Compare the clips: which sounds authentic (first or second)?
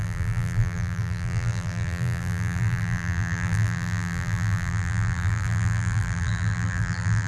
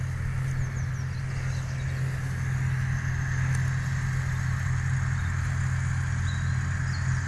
second